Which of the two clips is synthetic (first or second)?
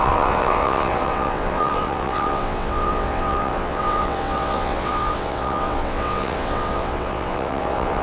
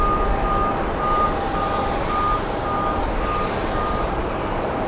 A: first